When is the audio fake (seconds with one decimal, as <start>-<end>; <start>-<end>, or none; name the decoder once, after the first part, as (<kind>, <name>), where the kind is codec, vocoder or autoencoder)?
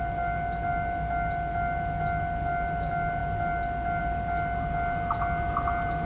none